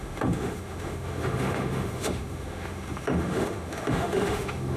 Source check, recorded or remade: remade